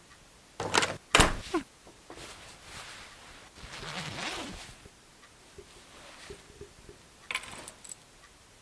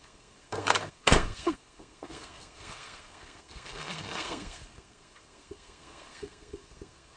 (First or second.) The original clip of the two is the first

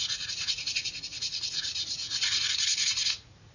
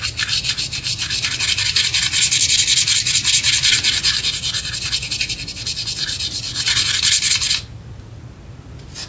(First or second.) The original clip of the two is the second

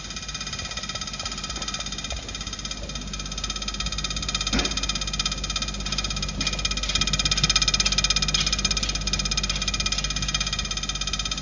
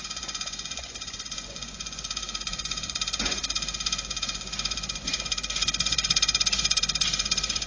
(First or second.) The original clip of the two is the first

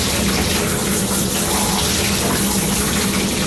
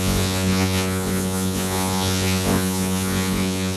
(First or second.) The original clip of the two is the first